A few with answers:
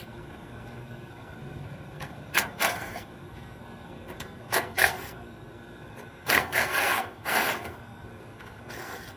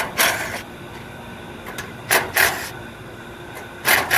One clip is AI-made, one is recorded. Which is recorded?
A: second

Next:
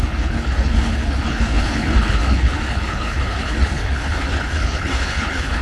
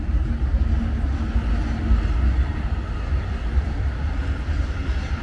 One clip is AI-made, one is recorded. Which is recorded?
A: second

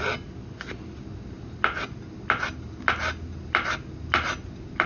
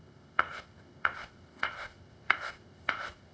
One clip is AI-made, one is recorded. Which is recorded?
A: first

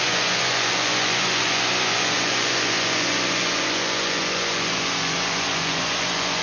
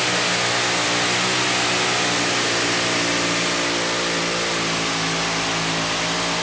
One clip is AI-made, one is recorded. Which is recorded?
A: second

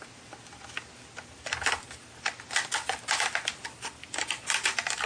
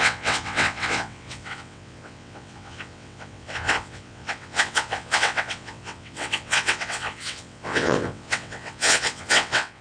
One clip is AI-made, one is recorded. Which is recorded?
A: first